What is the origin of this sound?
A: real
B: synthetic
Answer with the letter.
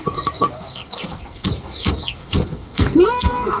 B